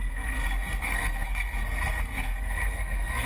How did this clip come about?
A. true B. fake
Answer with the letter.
B